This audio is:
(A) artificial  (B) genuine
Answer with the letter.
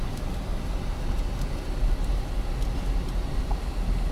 B